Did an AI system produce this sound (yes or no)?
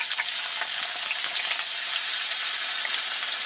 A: no